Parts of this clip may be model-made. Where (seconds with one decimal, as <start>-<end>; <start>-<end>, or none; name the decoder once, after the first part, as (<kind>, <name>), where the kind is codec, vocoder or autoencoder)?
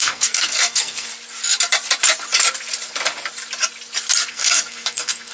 0.0-1.1 (codec, SNAC); 4.3-5.3